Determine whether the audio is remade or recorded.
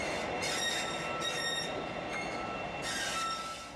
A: recorded